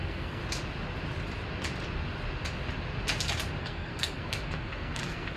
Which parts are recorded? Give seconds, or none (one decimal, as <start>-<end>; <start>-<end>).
0.4-3.6